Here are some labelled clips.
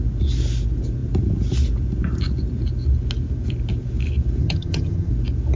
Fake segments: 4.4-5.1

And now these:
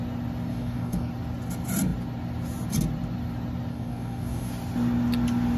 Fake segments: 0.5-1.1; 3.7-4.5

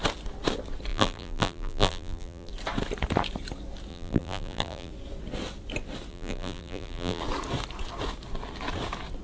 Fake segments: 0.9-2.5; 3.9-4.9; 6.1-7.2

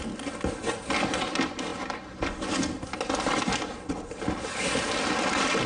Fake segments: none

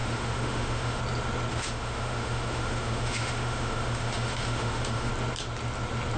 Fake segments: 0.0-1.0; 1.5-5.1

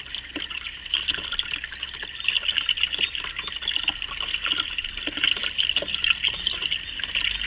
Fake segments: none